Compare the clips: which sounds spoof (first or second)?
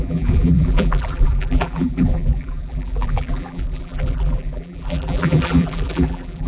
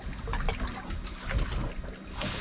first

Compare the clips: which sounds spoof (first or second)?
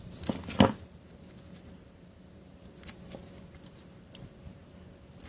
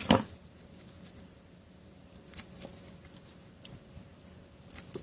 second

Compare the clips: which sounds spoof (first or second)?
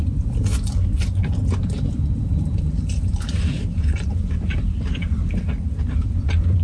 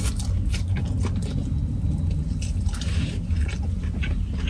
first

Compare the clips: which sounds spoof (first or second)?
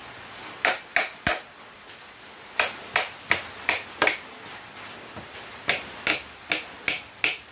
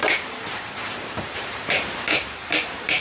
second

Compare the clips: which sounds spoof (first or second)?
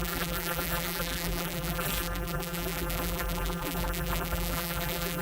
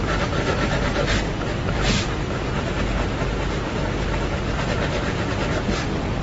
first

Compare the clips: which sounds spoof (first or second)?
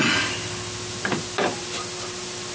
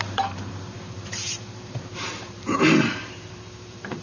second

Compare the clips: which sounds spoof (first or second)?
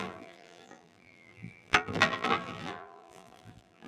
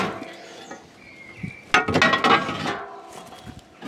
first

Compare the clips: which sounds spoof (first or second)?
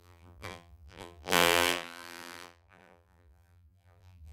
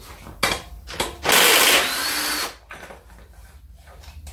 first